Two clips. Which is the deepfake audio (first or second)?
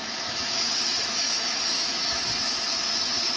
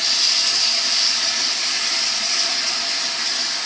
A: first